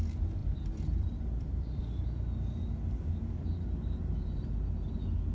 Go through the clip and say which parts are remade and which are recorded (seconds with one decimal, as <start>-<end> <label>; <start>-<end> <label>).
0.0-0.4 recorded; 0.4-2.2 remade; 2.2-5.3 recorded